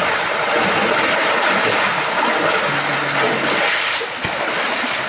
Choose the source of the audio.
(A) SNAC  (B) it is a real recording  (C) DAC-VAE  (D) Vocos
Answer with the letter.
B